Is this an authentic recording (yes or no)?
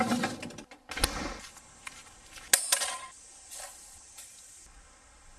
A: yes